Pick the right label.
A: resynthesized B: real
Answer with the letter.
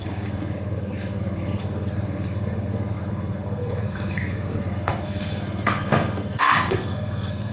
A